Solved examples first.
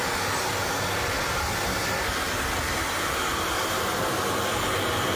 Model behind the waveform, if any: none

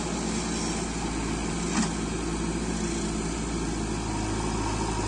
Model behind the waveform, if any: none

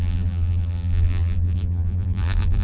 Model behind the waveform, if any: vocoder, BigVGAN v2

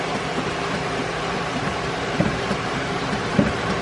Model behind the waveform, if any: vocoder, BigVGAN v2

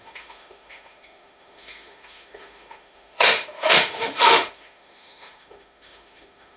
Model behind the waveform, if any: autoencoder, DAC-VAE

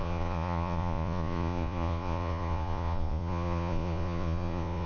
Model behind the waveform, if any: vocoder, Vocos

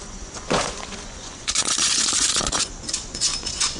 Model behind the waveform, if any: vocoder, Vocos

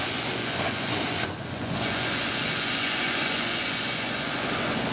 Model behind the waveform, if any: vocoder, Vocos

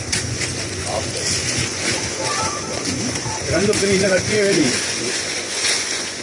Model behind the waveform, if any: vocoder, Vocos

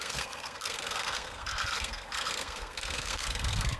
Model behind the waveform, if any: codec, SNAC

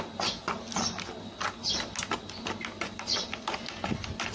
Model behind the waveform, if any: none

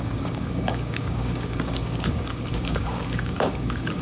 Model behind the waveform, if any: codec, DAC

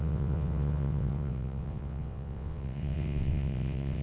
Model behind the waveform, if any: vocoder, WaveNeXt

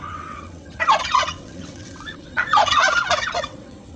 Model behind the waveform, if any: vocoder, WaveNeXt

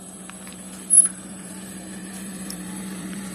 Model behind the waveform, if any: vocoder, BigVGAN v2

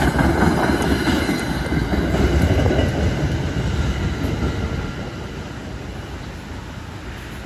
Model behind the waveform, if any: none